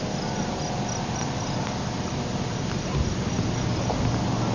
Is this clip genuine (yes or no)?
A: yes